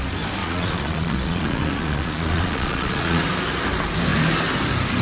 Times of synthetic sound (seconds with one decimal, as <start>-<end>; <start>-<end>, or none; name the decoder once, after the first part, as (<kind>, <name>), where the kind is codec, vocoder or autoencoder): 0.4-3.2 (vocoder, Vocos)